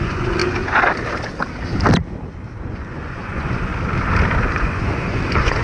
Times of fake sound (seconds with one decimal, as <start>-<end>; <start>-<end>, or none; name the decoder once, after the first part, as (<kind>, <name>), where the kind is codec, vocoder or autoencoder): 0.0-0.4 (vocoder, Vocos); 2.6-3.7; 4.5-5.6